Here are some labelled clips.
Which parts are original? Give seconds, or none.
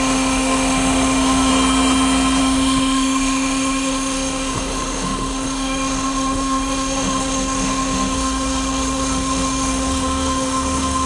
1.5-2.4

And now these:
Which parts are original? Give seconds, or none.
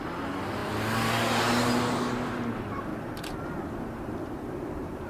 0.0-5.1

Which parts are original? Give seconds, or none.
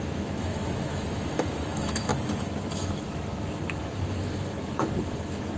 2.1-2.6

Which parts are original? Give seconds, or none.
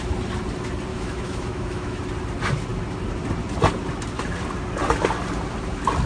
0.0-0.9; 2.0-6.1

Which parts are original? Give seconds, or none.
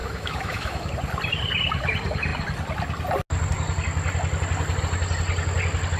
0.9-6.0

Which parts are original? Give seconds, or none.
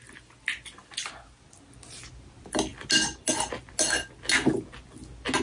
0.0-5.4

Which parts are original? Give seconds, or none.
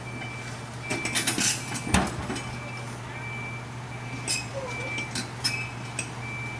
0.0-6.6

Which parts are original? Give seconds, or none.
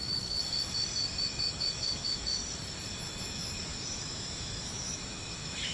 0.4-1.2; 2.4-3.0